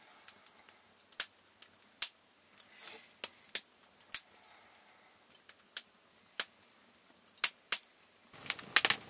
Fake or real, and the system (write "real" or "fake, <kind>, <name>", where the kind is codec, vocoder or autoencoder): real